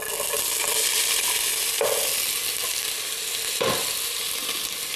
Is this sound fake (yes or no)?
no